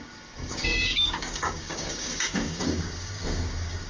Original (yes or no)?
no